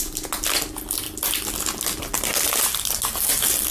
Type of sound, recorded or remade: recorded